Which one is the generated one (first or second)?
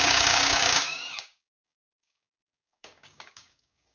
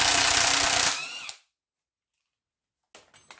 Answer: first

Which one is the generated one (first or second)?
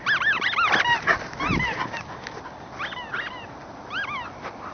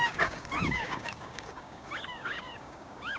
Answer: second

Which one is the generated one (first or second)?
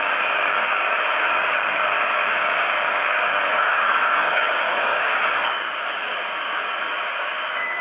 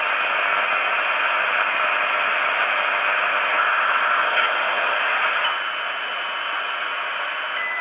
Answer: first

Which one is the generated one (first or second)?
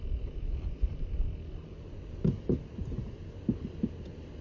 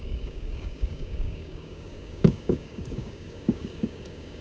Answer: second